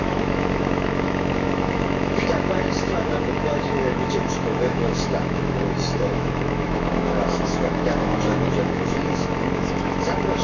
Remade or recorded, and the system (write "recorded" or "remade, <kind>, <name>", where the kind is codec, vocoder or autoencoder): remade, autoencoder, DAC-VAE